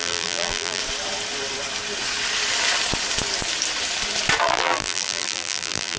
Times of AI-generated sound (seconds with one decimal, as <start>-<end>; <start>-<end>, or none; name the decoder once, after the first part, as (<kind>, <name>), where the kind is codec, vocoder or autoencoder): 0.0-0.8 (vocoder, BigVGAN v2); 4.4-6.0